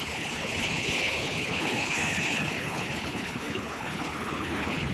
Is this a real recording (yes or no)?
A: no